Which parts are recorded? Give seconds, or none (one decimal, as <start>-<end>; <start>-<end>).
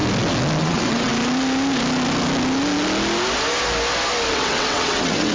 0.0-0.6; 1.1-4.3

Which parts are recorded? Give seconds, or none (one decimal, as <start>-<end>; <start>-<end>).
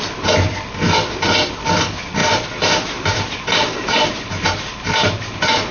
0.0-2.2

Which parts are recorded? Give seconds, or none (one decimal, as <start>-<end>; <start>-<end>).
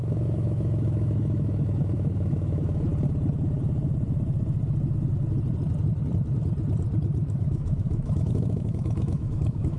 2.9-7.4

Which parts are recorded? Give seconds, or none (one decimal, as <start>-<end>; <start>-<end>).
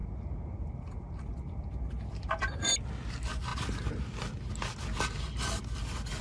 0.0-6.2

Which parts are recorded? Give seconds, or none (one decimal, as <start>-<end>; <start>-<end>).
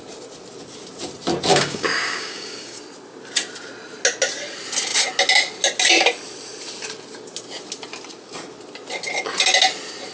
0.0-1.5; 2.8-10.1